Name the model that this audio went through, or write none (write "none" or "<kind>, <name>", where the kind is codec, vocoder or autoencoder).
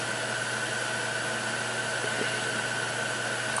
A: none